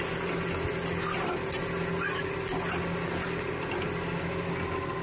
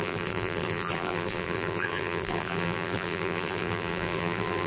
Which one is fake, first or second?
second